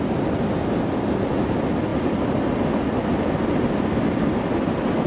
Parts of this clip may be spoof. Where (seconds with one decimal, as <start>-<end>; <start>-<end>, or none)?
none